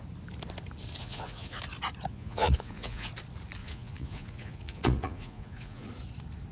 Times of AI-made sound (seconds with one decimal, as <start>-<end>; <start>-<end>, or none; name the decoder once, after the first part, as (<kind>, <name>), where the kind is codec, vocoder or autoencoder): 1.0-1.6 (vocoder, Vocos); 2.1-3.1; 3.6-5.9